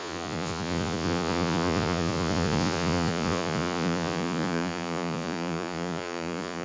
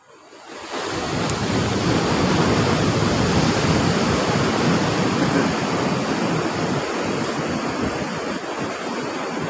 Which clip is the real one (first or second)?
second